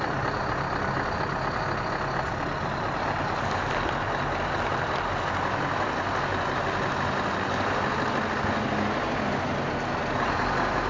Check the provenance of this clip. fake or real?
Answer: real